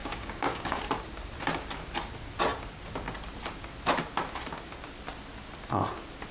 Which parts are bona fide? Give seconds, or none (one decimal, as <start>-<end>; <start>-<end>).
0.8-6.3